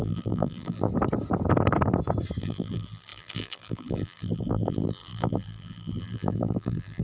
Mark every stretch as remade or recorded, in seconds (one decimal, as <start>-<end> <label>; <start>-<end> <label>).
0.0-0.9 remade; 0.9-2.4 recorded; 2.4-7.0 remade